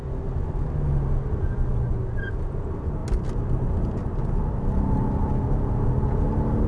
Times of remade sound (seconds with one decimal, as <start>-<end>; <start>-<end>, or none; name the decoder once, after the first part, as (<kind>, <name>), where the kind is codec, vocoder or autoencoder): none